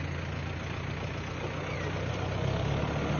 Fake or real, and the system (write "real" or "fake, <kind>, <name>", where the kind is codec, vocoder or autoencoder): real